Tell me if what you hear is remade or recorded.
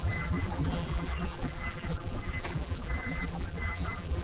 remade